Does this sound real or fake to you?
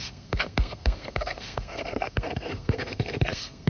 fake